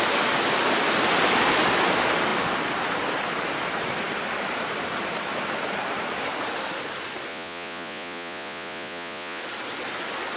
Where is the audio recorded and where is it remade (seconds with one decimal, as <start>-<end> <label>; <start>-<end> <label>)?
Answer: 0.0-7.3 recorded; 7.3-9.4 remade; 9.4-10.4 recorded